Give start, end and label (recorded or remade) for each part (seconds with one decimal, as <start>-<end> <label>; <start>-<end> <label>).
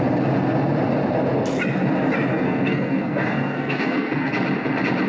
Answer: 0.0-2.3 recorded; 2.3-4.3 remade; 4.3-5.1 recorded